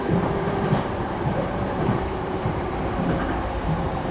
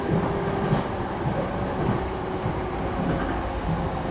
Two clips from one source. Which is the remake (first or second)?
first